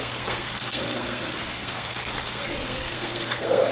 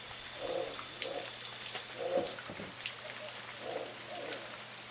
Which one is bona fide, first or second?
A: second